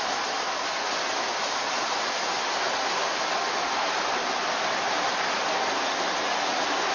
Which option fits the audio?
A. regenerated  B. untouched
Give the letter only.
B